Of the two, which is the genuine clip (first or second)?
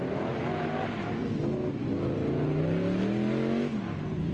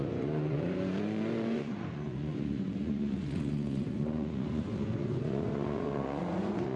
first